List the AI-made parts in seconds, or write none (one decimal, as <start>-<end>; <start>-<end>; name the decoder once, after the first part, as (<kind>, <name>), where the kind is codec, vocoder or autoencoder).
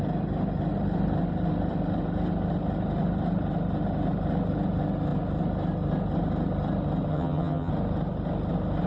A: 7.1-7.7 (vocoder, HiFi-GAN)